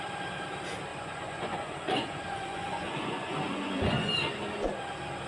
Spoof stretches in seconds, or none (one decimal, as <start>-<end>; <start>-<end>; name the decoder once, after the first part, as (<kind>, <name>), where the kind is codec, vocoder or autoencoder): 0.9-4.1 (vocoder, Vocos)